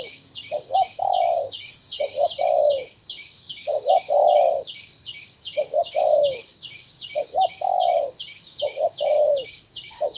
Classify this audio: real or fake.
fake